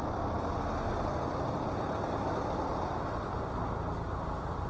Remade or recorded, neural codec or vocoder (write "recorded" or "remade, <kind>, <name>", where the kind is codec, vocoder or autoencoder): recorded